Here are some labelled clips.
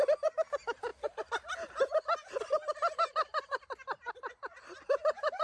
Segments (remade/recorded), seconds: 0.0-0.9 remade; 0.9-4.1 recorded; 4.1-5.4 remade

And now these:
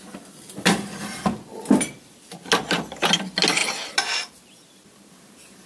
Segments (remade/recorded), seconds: 0.0-5.7 recorded

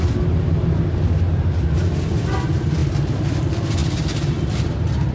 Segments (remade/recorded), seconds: 0.0-5.1 recorded

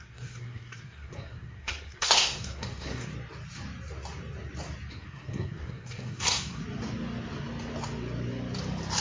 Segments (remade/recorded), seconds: 0.0-3.1 remade; 3.1-4.9 recorded; 4.9-6.6 remade; 6.6-9.0 recorded

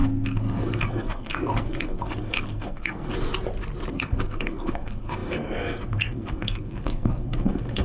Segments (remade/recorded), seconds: 0.0-3.1 remade; 3.1-3.9 recorded; 3.9-7.8 remade

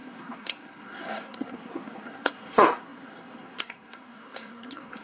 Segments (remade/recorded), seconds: 0.0-5.0 remade

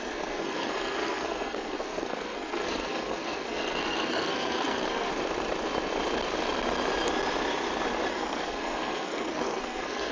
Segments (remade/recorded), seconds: 0.0-5.1 remade; 5.1-8.1 recorded; 8.1-10.1 remade

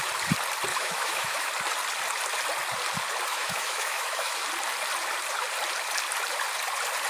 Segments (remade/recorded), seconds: 0.0-0.7 recorded; 0.7-1.5 remade; 1.5-3.3 recorded; 3.3-4.4 remade; 4.4-7.1 recorded